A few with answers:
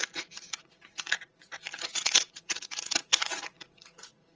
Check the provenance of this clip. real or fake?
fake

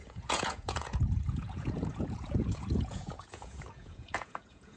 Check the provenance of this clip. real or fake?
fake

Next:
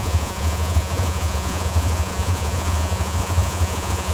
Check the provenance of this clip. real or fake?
fake